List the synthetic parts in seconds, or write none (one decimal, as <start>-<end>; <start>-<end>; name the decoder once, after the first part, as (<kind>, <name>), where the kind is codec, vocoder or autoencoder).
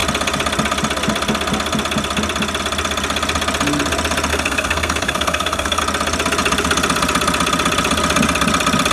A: 4.3-5.8 (codec, SNAC)